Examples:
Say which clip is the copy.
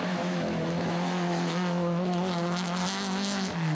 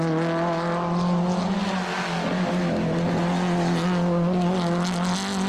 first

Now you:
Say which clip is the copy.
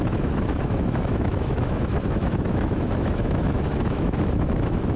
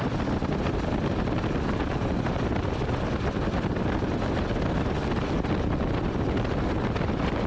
first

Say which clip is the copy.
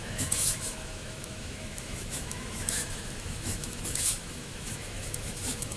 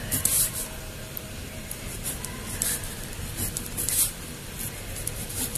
first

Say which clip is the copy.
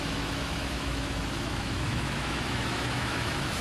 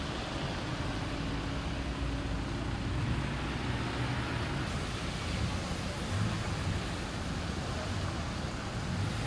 first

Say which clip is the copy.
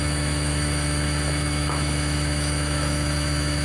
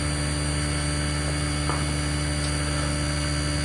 first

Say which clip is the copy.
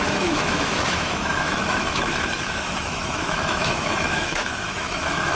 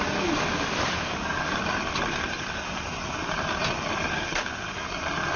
first